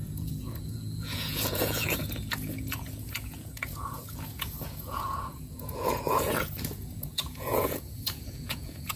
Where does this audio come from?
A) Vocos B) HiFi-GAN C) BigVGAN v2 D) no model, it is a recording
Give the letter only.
A